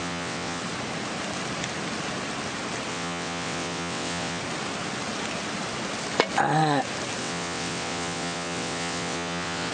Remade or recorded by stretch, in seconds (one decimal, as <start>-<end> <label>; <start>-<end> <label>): 0.0-0.6 remade; 0.6-2.9 recorded; 2.9-4.4 remade; 4.4-7.2 recorded; 7.2-9.7 remade